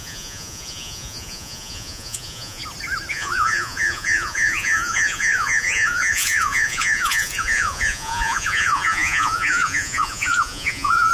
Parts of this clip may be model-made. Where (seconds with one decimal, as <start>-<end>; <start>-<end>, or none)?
0.0-2.6; 3.1-11.1